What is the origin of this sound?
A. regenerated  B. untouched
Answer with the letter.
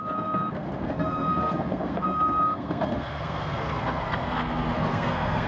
A